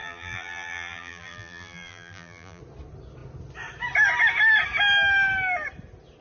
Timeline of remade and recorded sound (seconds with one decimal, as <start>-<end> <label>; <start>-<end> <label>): 0.0-2.6 remade; 2.6-6.2 recorded